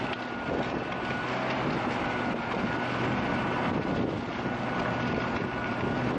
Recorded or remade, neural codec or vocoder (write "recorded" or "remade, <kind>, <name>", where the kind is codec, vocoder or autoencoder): recorded